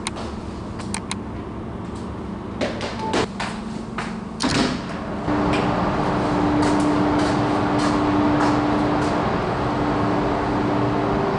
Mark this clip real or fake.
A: real